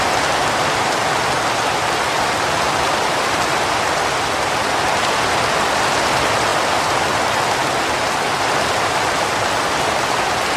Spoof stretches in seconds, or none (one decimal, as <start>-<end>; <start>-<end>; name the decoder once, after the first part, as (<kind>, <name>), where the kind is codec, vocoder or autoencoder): none